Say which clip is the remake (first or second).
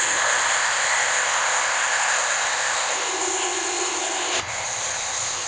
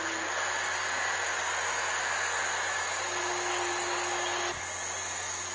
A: first